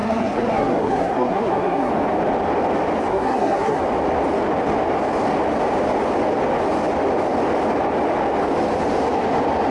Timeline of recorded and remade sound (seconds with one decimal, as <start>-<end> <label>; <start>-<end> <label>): 0.0-1.9 remade; 1.9-3.1 recorded; 3.1-3.8 remade; 3.8-9.7 recorded